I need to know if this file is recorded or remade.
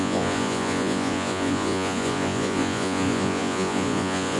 remade